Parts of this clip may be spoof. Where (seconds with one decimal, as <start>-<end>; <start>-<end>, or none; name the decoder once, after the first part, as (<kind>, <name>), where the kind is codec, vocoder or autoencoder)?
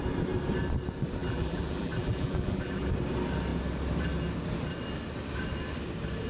1.2-2.9 (vocoder, BigVGAN v2)